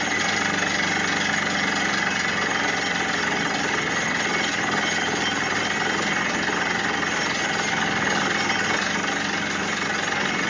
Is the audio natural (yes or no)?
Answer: yes